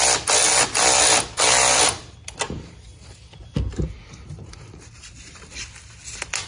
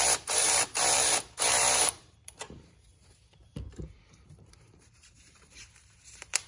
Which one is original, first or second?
first